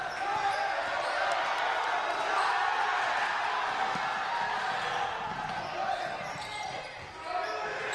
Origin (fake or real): real